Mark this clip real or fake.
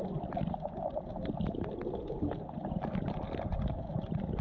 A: real